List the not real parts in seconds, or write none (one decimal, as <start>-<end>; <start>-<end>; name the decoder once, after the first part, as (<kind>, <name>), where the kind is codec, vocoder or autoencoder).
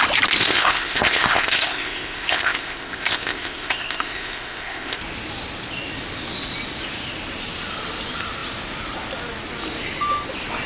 0.4-5.0 (codec, ZipCodec)